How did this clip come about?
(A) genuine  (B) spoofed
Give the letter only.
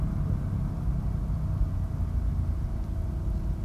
A